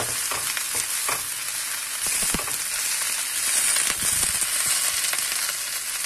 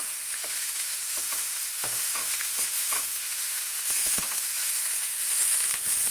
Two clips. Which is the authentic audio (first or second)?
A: first